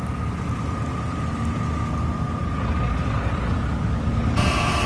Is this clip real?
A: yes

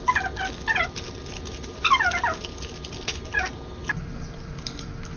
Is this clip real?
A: yes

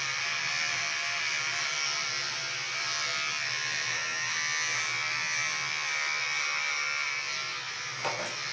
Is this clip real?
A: yes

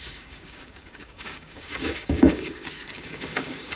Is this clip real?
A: no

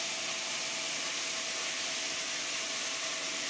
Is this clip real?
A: yes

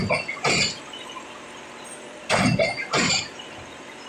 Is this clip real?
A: no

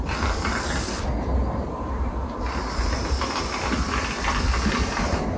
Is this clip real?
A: yes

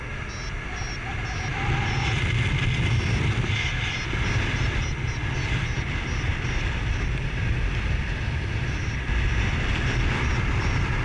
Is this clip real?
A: yes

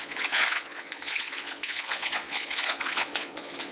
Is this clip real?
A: no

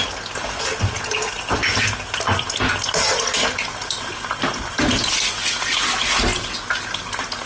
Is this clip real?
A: yes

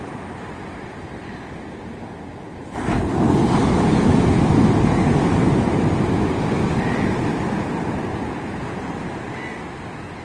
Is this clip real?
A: yes